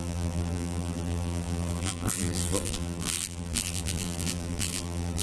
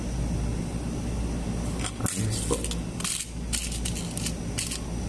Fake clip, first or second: first